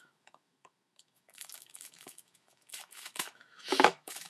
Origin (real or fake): fake